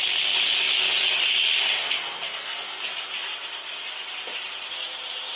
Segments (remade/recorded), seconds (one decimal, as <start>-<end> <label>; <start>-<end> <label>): 0.0-1.8 recorded; 1.8-2.9 remade; 2.9-5.4 recorded